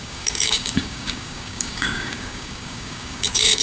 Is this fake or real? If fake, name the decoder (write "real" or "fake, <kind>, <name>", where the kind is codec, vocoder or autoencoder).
fake, codec, DAC